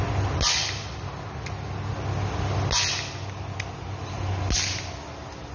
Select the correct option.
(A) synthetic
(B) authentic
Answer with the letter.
B